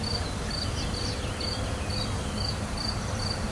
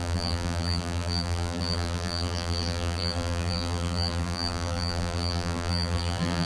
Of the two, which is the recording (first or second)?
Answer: first